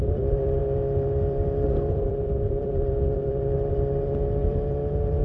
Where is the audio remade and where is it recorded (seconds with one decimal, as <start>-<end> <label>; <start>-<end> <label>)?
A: 0.0-5.2 remade